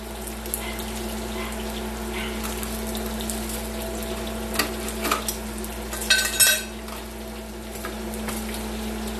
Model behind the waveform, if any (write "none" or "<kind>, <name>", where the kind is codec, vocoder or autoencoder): none